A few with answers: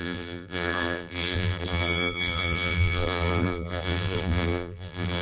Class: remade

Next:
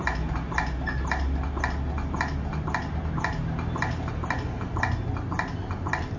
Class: recorded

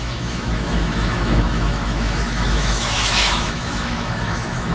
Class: remade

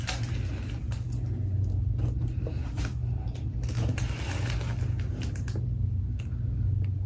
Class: recorded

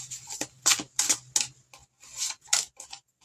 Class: recorded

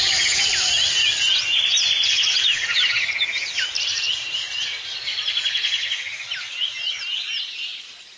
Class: recorded